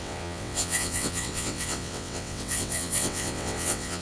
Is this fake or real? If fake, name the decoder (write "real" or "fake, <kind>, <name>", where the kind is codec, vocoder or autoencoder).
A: fake, vocoder, WaveNeXt